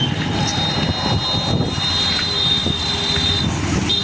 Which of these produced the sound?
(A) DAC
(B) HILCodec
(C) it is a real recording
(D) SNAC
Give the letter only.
C